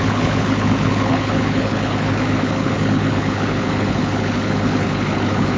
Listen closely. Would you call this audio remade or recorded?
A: remade